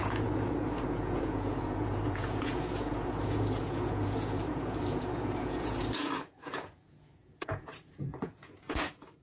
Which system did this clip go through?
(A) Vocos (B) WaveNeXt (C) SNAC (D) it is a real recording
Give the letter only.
A